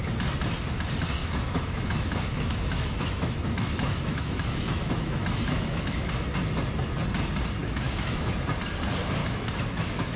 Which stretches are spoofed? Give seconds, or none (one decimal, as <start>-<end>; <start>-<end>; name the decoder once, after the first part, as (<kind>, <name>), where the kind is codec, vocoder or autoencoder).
1.2-6.1 (autoencoder, DAC-VAE); 7.6-8.3; 9.2-10.2